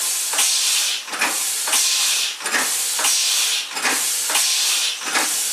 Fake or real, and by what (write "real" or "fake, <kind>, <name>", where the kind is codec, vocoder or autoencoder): real